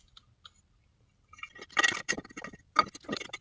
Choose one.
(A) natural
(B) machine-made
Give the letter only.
A